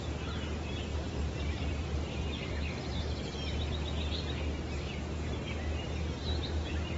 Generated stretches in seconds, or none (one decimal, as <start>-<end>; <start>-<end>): 0.9-3.0